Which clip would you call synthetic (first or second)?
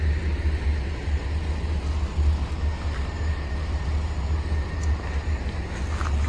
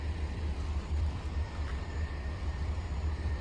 second